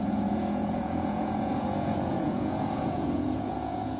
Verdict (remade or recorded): remade